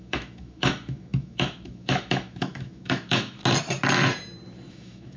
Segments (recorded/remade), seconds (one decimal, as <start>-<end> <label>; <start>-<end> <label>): 0.0-3.4 remade; 3.4-4.7 recorded; 4.7-5.2 remade